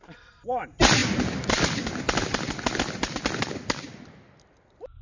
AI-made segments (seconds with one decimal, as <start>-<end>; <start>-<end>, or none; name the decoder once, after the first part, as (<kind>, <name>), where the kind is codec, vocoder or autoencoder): none